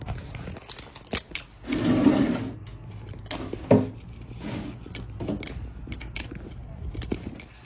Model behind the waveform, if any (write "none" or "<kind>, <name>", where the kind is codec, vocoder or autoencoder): none